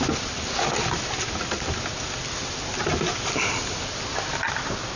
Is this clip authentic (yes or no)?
yes